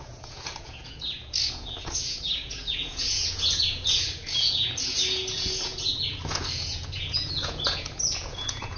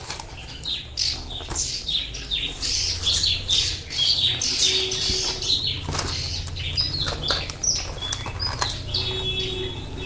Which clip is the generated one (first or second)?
first